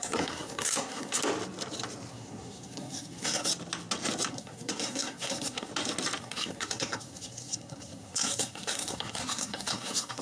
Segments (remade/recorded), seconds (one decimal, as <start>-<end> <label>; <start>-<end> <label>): 0.0-1.2 remade; 1.2-2.1 recorded; 2.1-3.5 remade; 3.5-4.3 recorded; 4.3-5.7 remade; 5.7-6.2 recorded; 6.2-10.2 remade